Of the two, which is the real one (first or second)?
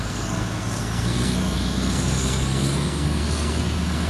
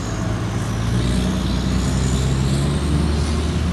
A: second